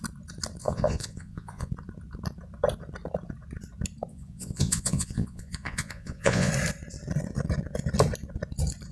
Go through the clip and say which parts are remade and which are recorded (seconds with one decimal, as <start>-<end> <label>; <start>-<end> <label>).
0.0-0.6 recorded; 0.6-1.7 remade; 1.7-4.1 recorded; 4.1-6.5 remade; 6.5-8.9 recorded